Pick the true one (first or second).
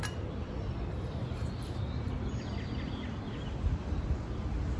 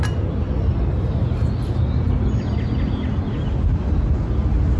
second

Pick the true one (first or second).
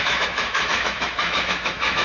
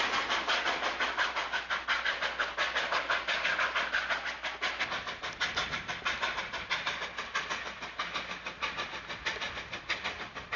second